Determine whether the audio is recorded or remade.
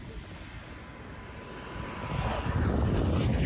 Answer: recorded